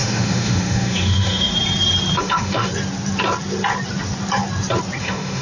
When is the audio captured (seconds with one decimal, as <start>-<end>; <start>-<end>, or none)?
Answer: 1.5-2.2; 2.7-5.0

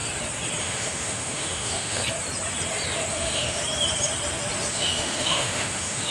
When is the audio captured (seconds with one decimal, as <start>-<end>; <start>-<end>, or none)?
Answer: 0.0-0.6; 2.0-3.1; 3.6-4.7

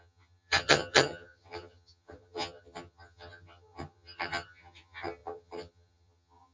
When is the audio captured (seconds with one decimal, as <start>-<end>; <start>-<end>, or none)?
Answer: none